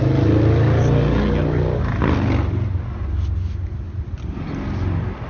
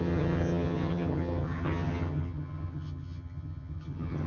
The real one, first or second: first